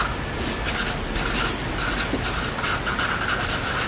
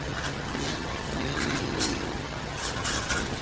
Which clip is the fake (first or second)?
second